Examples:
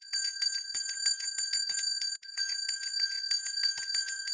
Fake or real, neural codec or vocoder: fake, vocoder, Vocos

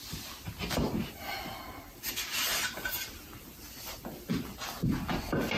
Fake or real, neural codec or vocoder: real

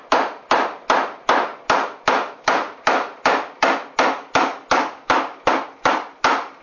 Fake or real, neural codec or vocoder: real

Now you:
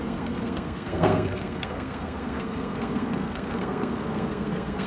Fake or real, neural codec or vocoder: fake, codec, SNAC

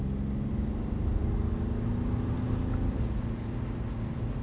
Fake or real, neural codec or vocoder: real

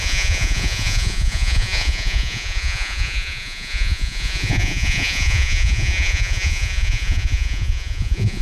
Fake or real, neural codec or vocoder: fake, vocoder, Vocos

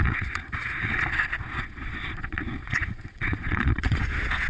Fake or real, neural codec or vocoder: fake, vocoder, Vocos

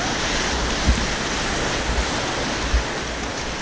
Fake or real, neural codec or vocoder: real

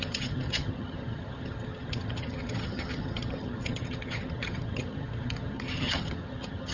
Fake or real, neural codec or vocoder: fake, vocoder, HiFi-GAN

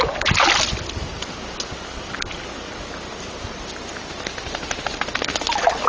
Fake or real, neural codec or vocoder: real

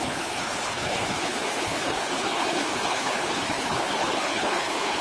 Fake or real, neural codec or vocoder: fake, codec, HILCodec